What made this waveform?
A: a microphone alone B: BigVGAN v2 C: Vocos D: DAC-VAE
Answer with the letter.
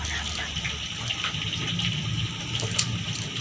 A